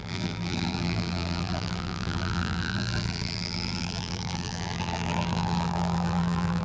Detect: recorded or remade remade